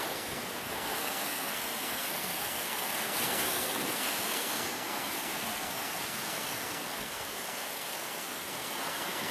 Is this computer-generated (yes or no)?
yes